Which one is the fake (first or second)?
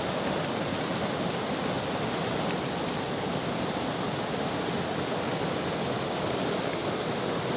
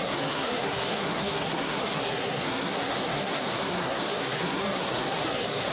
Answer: second